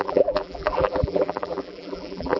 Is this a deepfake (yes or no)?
yes